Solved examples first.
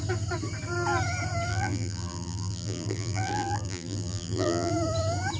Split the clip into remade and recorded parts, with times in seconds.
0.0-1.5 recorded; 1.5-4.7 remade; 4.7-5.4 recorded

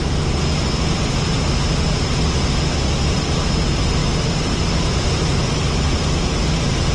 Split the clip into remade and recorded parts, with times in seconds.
0.0-6.9 remade